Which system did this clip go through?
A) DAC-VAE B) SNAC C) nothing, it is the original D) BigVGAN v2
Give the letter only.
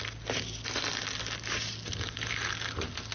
C